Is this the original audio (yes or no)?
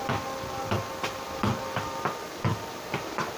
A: yes